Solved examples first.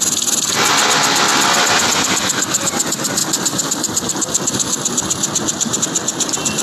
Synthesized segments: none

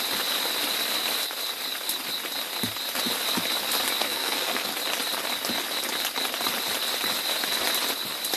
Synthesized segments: 4.0-4.7 (codec, SNAC)

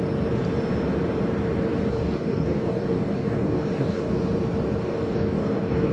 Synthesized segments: 1.9-4.1 (codec, DAC); 4.8-5.9

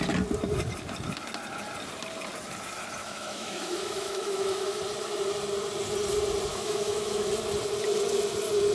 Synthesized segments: 3.0-4.8 (autoencoder, DAC-VAE); 6.5-7.3

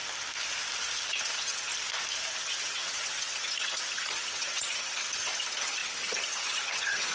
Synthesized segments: 1.1-1.7 (vocoder, HiFi-GAN); 2.3-7.1

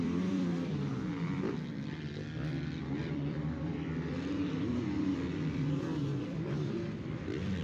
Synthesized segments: 0.0-0.9 (vocoder, BigVGAN v2); 3.0-7.6

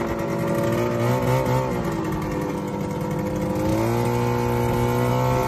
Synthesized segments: none

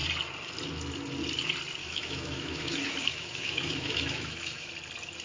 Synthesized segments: 1.8-4.7 (autoencoder, DAC-VAE)